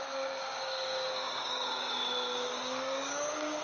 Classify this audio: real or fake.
fake